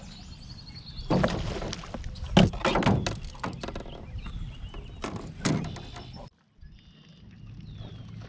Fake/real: real